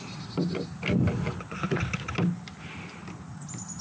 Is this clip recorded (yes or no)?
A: yes